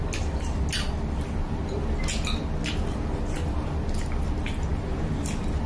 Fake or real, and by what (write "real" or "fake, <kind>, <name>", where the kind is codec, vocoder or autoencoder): real